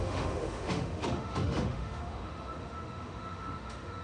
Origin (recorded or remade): remade